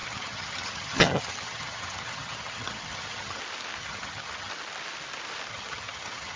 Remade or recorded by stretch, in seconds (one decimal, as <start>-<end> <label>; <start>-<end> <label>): 0.0-3.4 remade; 3.4-3.8 recorded; 3.8-4.5 remade; 4.5-5.5 recorded; 5.5-6.4 remade